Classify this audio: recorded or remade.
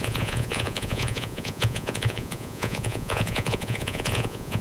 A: remade